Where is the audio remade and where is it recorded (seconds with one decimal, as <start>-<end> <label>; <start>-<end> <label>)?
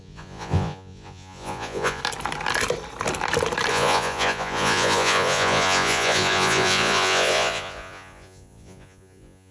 0.0-2.0 remade; 2.0-3.7 recorded; 3.7-9.5 remade